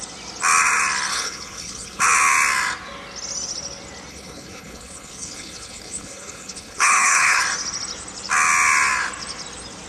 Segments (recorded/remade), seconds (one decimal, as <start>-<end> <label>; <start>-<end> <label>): 0.0-1.1 recorded; 1.1-2.0 remade; 2.0-4.1 recorded; 4.1-7.4 remade; 7.4-9.9 recorded